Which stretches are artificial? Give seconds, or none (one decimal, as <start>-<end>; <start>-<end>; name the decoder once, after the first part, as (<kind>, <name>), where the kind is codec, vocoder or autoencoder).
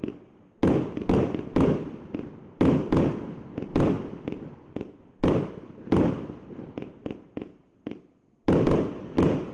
none